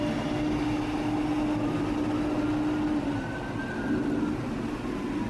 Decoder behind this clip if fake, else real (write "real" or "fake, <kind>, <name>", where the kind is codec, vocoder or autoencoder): real